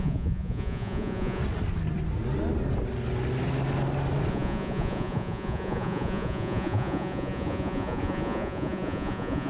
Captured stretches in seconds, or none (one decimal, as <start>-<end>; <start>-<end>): 1.4-4.3